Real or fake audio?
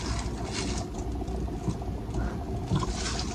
real